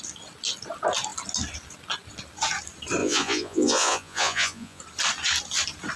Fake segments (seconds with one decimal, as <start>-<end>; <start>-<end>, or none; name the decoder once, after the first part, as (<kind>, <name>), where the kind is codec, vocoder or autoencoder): 3.0-4.8 (vocoder, Vocos)